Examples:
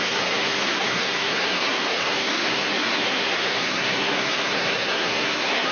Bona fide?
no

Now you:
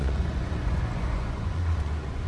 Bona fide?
no